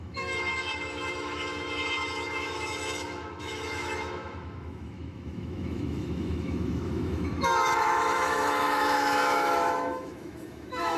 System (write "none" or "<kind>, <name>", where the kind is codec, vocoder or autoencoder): autoencoder, DAC-VAE